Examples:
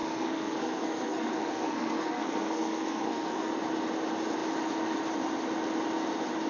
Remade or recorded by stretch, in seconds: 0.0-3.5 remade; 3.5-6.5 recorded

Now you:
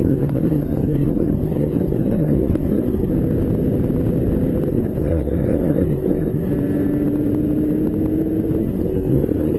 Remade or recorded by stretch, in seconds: 0.0-3.1 remade; 3.1-4.7 recorded; 4.7-6.5 remade; 6.5-8.6 recorded; 8.6-9.6 remade

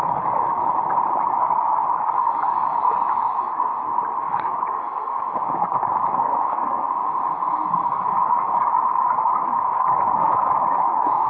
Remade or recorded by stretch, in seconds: 0.0-0.6 remade; 0.6-1.3 recorded; 1.3-3.7 remade; 3.7-4.2 recorded; 4.2-7.0 remade; 7.0-7.5 recorded; 7.5-11.3 remade

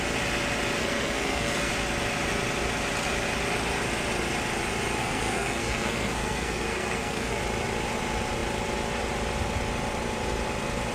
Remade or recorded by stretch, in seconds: 0.0-0.8 recorded; 0.8-1.7 remade; 1.7-5.0 recorded; 5.0-7.4 remade; 7.4-10.9 recorded

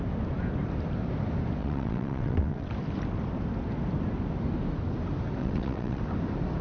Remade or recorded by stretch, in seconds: 0.0-1.6 recorded; 1.6-2.7 remade; 2.7-5.4 recorded; 5.4-6.0 remade; 6.0-6.6 recorded

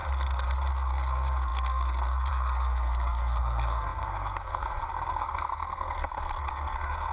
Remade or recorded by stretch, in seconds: 0.0-0.7 recorded; 0.7-7.1 remade